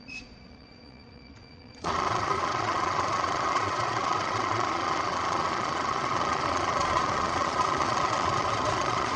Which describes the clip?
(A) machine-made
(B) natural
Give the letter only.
A